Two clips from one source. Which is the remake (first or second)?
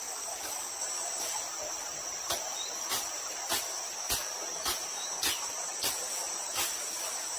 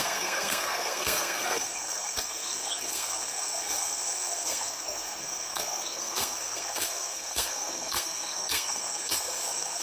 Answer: second